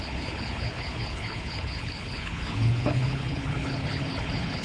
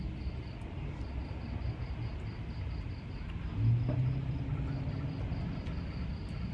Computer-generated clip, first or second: first